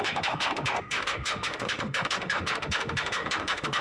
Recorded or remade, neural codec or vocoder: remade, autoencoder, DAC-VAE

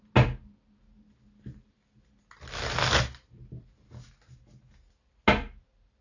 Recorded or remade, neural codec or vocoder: recorded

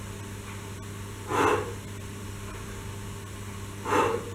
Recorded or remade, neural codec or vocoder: recorded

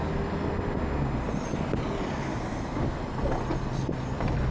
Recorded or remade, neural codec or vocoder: recorded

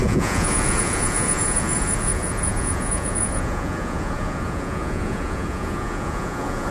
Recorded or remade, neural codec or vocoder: remade, vocoder, Vocos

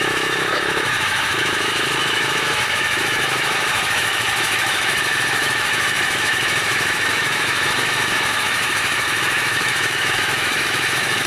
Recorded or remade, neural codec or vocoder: remade, autoencoder, DAC-VAE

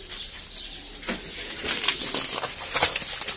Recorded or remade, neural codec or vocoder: recorded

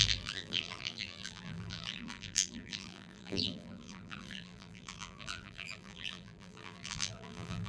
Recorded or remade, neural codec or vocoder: remade, vocoder, BigVGAN v2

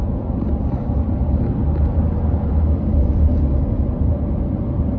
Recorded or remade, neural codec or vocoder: recorded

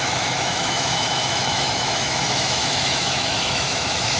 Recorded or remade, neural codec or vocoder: remade, autoencoder, DAC-VAE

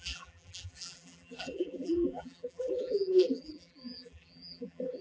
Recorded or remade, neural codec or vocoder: remade, vocoder, BigVGAN v2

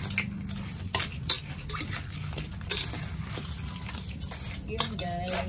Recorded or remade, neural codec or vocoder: recorded